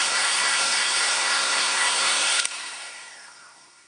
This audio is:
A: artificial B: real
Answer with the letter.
A